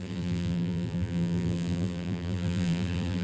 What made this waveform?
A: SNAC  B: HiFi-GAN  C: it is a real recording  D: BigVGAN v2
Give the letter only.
D